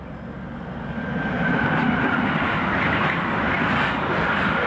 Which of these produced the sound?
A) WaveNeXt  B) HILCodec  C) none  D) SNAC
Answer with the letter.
C